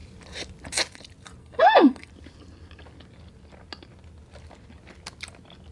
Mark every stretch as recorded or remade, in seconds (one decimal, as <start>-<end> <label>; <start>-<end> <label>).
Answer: 0.0-1.4 recorded; 1.4-2.1 remade; 2.1-5.7 recorded

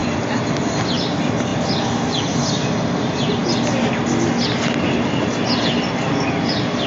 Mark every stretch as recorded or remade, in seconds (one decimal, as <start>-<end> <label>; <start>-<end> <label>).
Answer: 0.0-6.9 recorded

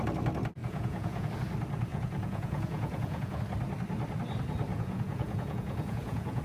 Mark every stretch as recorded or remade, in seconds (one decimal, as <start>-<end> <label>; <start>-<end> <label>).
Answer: 0.0-0.6 recorded; 0.6-1.3 remade; 1.3-1.9 recorded; 1.9-3.4 remade; 3.4-4.7 recorded; 4.7-6.4 remade

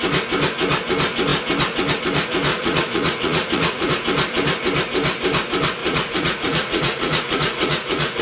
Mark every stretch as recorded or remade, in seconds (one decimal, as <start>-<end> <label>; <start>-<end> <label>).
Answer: 0.0-2.5 recorded; 2.5-3.9 remade; 3.9-5.8 recorded; 5.8-8.2 remade

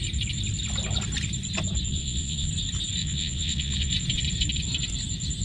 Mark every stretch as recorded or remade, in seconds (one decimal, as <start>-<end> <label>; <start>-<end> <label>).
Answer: 0.0-1.9 recorded; 1.9-2.5 remade; 2.5-3.0 recorded; 3.0-3.9 remade; 3.9-5.4 recorded

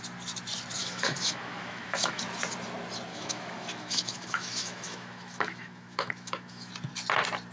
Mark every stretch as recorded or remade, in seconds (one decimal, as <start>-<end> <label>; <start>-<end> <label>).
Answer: 0.0-0.8 recorded; 0.8-2.2 remade; 2.2-3.1 recorded; 3.1-6.7 remade; 6.7-7.5 recorded

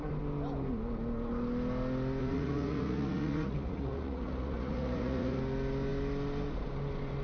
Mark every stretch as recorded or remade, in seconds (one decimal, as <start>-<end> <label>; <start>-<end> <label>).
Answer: 0.0-2.2 recorded; 2.2-5.4 remade; 5.4-7.2 recorded

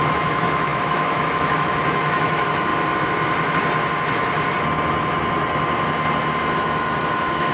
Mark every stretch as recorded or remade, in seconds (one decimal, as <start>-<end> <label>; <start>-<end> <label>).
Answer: 0.0-2.7 remade; 2.7-7.1 recorded; 7.1-7.5 remade